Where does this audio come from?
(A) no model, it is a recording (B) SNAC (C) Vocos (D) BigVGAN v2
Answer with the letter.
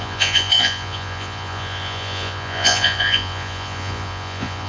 C